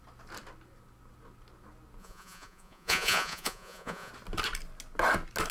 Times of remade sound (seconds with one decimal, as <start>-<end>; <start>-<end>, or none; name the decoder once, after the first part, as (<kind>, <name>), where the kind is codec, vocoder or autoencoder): 2.0-4.1 (vocoder, Vocos)